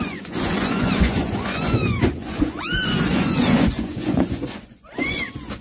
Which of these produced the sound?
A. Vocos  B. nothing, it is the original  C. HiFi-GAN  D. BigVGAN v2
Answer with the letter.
A